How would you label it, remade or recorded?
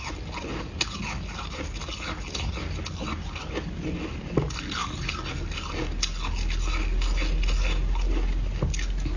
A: recorded